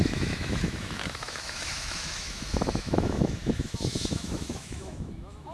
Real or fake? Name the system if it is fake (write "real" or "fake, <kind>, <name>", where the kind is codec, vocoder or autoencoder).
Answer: fake, autoencoder, DAC-VAE